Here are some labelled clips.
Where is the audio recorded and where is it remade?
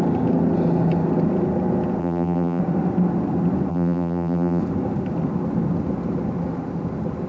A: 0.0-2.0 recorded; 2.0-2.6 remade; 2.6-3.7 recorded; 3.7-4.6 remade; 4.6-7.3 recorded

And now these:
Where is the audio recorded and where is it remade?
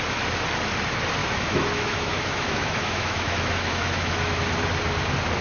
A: 0.0-1.2 recorded; 1.2-4.4 remade; 4.4-5.4 recorded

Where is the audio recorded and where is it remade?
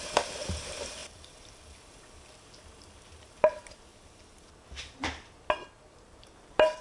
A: 0.0-1.0 remade; 1.0-3.3 recorded; 3.3-3.9 remade; 3.9-5.9 recorded; 5.9-6.8 remade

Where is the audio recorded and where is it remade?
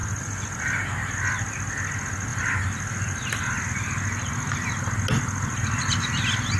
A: 0.0-2.3 recorded; 2.3-3.6 remade; 3.6-6.6 recorded